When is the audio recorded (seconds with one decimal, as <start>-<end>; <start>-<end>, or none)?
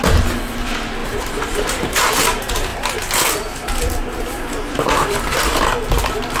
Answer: 0.0-1.0; 2.1-6.4